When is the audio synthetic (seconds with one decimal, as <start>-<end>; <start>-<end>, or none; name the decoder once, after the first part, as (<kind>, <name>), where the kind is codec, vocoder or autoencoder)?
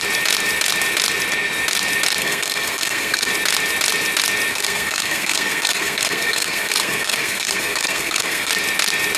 2.2-3.3 (codec, SNAC); 4.5-8.5